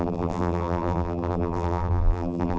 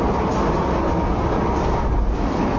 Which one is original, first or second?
second